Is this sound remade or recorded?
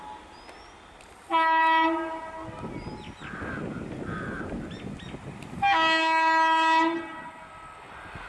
recorded